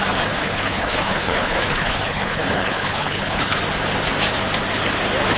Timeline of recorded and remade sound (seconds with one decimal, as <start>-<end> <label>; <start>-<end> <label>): 0.0-0.4 recorded; 0.4-3.6 remade; 3.6-5.4 recorded